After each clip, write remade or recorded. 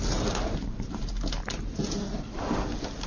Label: recorded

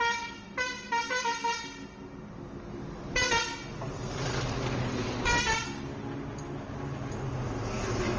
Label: recorded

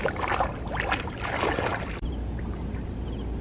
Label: recorded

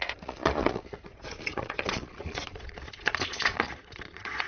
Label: remade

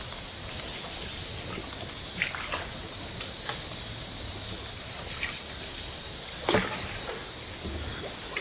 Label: recorded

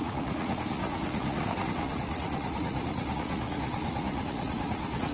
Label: remade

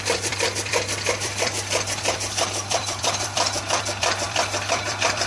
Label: remade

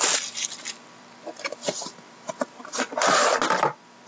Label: recorded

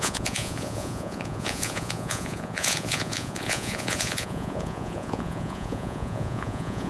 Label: remade